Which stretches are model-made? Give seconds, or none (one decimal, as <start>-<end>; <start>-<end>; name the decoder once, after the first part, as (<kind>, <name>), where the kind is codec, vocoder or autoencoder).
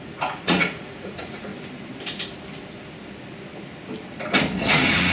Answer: 0.0-1.5 (vocoder, Vocos); 4.6-5.1